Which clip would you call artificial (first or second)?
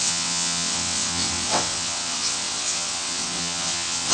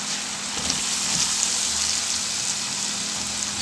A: first